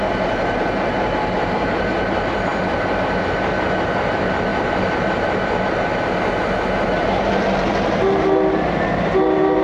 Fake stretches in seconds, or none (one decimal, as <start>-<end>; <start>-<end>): 0.0-9.6